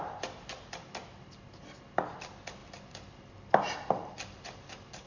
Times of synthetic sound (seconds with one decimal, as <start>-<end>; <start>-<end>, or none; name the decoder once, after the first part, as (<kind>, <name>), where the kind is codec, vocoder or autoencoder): none